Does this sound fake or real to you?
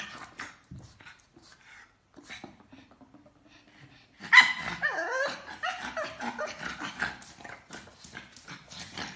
real